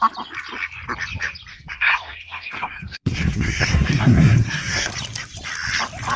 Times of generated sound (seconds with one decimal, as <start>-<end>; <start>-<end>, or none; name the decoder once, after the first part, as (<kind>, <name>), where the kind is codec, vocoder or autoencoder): 1.5-4.9 (codec, SNAC)